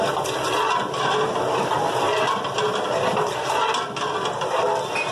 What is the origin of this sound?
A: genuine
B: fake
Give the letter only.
A